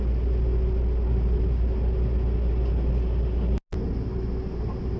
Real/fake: real